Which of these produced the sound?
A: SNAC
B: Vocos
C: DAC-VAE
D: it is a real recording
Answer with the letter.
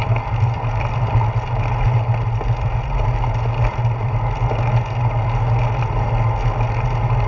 D